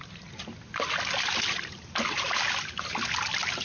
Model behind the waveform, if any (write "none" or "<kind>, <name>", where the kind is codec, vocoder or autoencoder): none